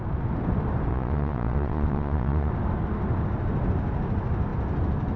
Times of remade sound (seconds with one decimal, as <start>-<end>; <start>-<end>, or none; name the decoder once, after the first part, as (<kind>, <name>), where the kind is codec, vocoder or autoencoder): 0.9-2.5 (vocoder, Vocos)